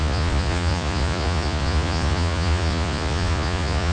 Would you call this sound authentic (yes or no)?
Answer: no